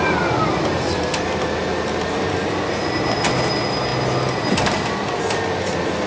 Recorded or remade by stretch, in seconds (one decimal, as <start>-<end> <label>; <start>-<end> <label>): 0.0-6.1 recorded